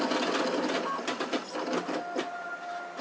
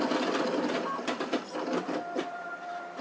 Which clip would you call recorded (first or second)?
first